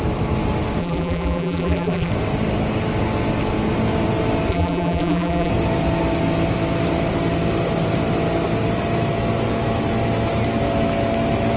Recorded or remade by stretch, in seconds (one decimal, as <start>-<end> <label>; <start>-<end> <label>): 0.0-0.8 recorded; 0.8-2.1 remade; 2.1-4.5 recorded; 4.5-5.5 remade; 5.5-11.6 recorded